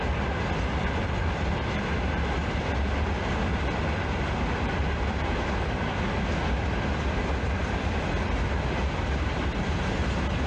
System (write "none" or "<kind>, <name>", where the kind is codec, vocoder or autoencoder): none